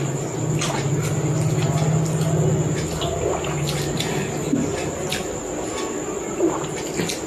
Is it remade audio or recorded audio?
recorded